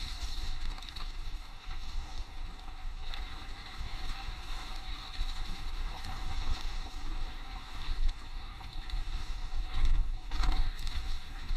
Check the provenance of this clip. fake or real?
fake